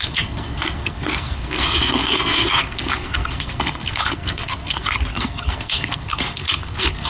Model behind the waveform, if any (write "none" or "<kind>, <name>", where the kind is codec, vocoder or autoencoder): codec, SNAC